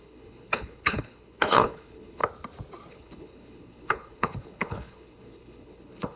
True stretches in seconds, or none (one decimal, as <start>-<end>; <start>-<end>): 2.2-2.9